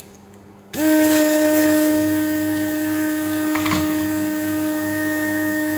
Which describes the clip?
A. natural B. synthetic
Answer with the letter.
B